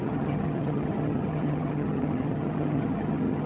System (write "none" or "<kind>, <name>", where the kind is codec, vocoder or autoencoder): vocoder, HiFi-GAN